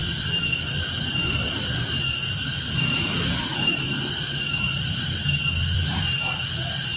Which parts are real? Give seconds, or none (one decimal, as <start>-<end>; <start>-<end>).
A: 0.0-3.7; 6.4-7.0